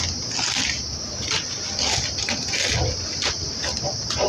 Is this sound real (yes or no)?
yes